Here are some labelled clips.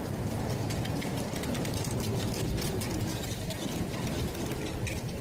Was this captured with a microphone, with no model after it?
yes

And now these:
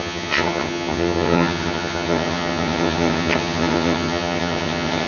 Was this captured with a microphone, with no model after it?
no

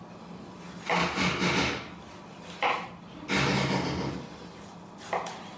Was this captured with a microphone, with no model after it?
yes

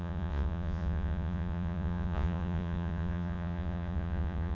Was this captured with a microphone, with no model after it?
no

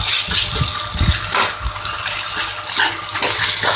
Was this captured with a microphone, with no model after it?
yes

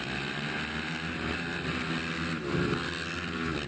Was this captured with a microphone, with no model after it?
yes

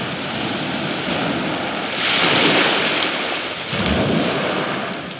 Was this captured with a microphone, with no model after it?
yes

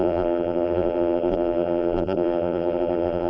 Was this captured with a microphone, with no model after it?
no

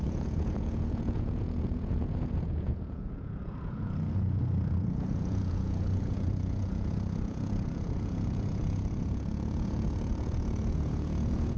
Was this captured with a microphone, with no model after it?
no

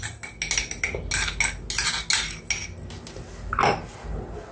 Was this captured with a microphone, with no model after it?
yes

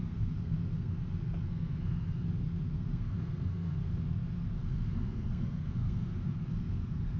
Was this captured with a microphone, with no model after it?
no